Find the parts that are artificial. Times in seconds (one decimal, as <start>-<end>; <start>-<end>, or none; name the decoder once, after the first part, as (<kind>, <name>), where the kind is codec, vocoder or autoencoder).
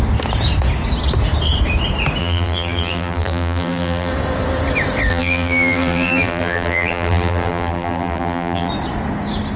2.2-4.1 (vocoder, BigVGAN v2); 5.1-8.7